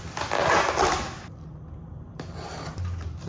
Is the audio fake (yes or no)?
no